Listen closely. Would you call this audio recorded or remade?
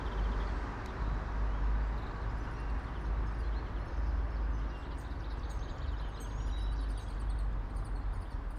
recorded